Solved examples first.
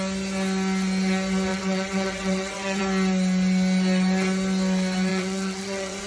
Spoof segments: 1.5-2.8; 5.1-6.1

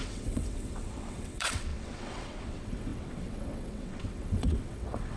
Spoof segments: 0.0-5.2

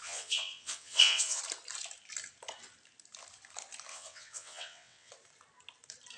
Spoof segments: 0.0-1.4; 3.9-5.1

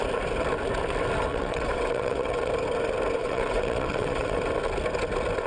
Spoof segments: 1.3-2.5; 3.2-4.4

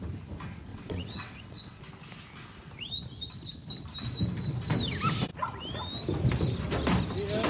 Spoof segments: 0.7-1.8

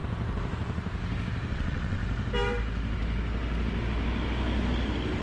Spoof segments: 1.5-2.0